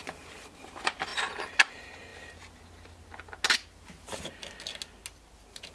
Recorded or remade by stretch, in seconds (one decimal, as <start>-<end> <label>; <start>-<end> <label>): 0.0-5.7 recorded